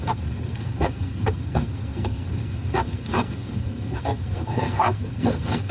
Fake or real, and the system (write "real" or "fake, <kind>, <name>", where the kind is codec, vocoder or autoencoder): fake, codec, SNAC